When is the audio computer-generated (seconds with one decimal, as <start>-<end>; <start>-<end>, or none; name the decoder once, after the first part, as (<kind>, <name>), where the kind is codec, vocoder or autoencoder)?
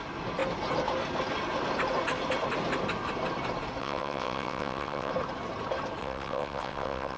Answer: 3.8-5.1 (vocoder, WaveNeXt); 6.0-7.2